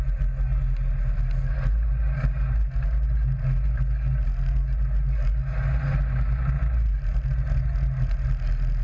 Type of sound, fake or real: real